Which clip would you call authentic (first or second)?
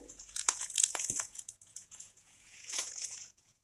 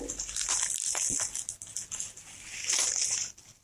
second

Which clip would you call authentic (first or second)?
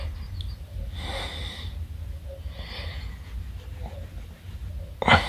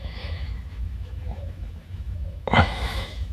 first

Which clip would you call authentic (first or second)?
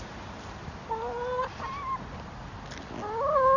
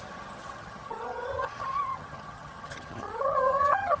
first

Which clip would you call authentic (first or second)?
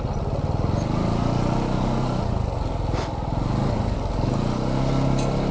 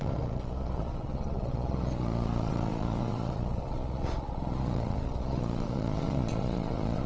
first